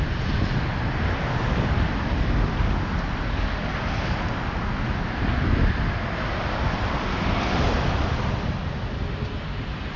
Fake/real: real